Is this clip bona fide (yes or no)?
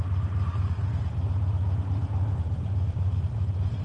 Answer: no